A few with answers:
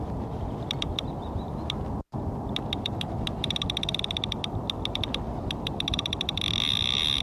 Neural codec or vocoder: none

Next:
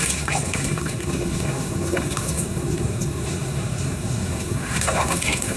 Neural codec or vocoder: codec, SNAC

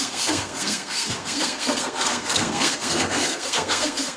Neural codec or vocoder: codec, SNAC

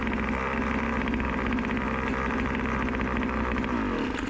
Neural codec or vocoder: none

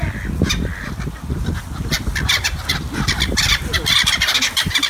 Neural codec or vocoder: none